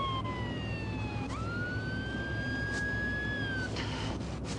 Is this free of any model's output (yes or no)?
yes